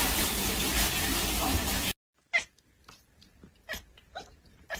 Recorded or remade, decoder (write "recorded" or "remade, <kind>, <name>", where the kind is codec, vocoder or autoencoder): recorded